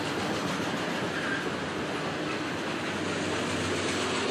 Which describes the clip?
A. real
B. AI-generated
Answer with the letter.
A